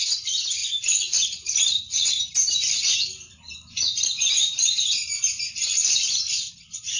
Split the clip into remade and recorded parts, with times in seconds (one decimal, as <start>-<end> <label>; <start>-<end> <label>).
0.0-7.0 remade